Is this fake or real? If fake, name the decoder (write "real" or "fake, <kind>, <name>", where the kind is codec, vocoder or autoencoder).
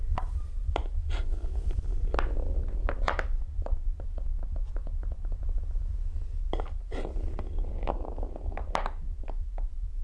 real